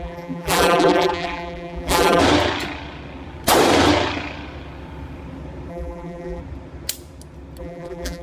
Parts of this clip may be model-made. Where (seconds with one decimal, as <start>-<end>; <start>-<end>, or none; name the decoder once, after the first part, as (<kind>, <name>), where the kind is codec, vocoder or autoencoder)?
0.0-2.2 (vocoder, BigVGAN v2); 5.7-6.4; 7.6-8.2